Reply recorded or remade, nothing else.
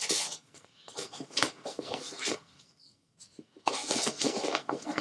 remade